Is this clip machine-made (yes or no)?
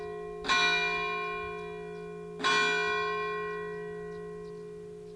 no